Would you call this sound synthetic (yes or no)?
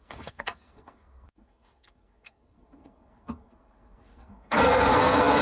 yes